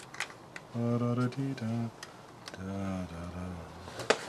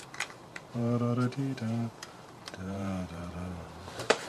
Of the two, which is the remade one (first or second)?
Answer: second